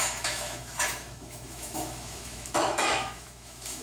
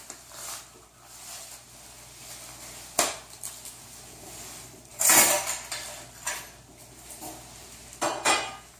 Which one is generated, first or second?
first